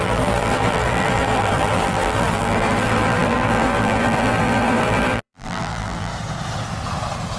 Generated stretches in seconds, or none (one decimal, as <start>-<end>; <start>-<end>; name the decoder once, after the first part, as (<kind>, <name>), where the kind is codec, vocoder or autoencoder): 0.0-6.1 (vocoder, BigVGAN v2)